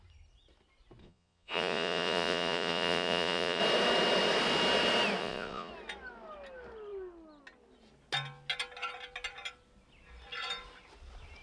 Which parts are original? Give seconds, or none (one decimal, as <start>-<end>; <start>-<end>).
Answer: 0.0-1.0; 3.6-5.2; 5.7-11.4

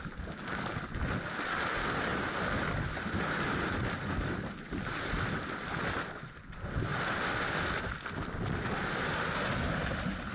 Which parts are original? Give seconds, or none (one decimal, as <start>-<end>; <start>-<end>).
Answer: 0.0-10.3

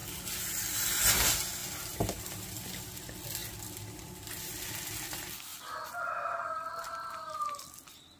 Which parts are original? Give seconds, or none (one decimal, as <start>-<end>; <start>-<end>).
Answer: 0.0-1.6; 2.6-3.4; 4.7-8.2

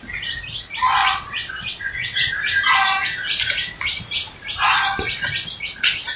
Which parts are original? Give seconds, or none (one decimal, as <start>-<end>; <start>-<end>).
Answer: 0.0-1.0; 2.3-6.2

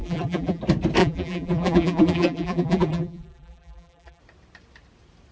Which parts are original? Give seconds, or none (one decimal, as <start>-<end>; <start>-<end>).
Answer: 0.6-1.0; 4.2-5.3